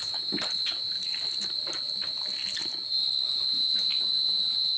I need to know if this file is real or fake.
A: real